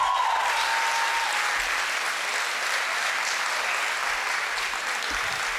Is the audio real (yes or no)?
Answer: yes